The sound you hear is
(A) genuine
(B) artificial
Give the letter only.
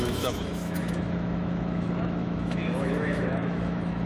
B